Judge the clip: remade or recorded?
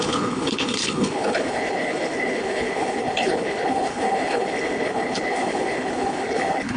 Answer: remade